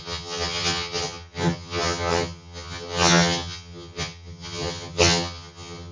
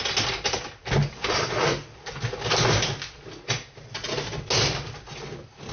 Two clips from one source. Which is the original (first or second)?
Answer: second